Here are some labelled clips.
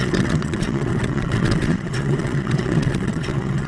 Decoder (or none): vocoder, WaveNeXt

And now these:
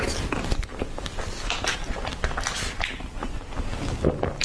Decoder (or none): none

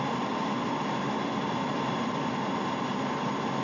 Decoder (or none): none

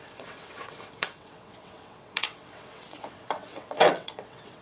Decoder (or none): vocoder, WaveNeXt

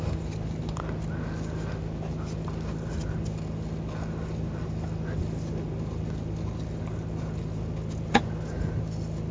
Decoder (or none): none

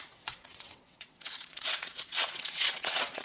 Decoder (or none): vocoder, WaveNeXt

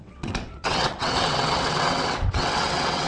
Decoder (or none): vocoder, WaveNeXt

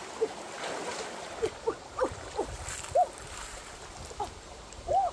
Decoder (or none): none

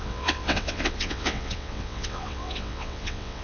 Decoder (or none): vocoder, WaveNeXt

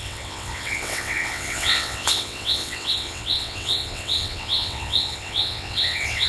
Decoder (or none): vocoder, WaveNeXt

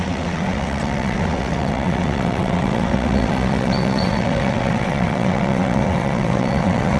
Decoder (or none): vocoder, WaveNeXt